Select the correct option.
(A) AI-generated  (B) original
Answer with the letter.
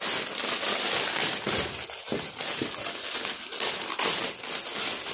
B